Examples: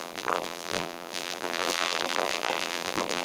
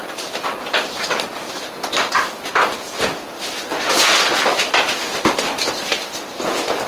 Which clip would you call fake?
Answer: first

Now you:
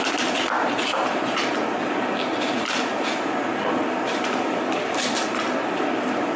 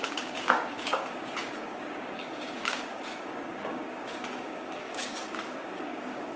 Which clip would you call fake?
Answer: second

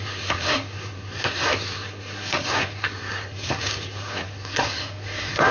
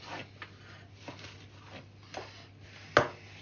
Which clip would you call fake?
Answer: first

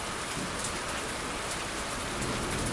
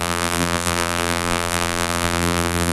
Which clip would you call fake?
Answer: second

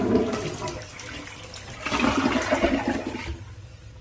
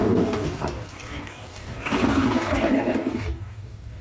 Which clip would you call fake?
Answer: second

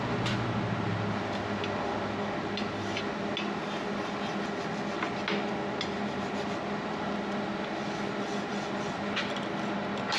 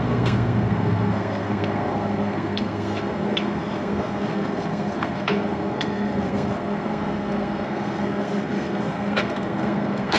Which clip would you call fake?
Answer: second